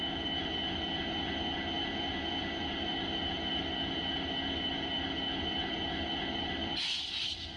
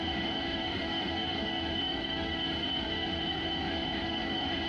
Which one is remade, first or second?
second